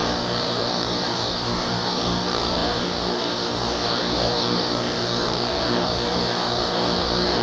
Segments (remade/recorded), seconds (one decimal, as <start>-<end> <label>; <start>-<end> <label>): 0.0-7.4 remade